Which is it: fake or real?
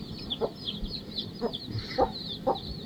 real